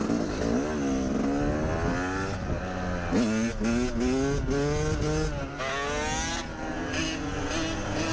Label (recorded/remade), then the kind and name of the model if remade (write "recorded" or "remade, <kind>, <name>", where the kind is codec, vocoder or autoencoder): recorded